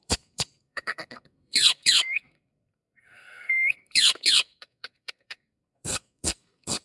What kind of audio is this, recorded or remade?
remade